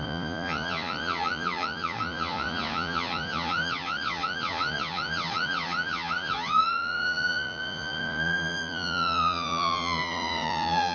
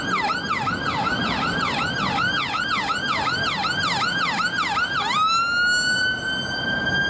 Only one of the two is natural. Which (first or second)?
second